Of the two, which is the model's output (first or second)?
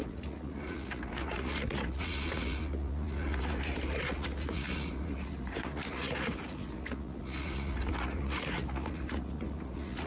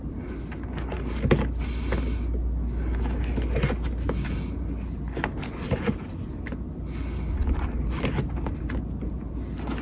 first